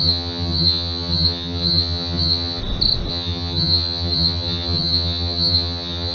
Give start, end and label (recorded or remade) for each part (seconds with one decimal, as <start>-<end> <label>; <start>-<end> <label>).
0.0-2.6 remade; 2.6-3.1 recorded; 3.1-6.1 remade